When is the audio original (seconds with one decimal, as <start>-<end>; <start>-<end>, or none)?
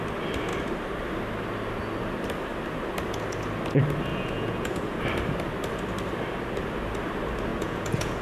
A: 0.0-4.1; 5.0-7.5